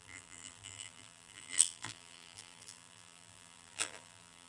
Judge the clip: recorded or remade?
remade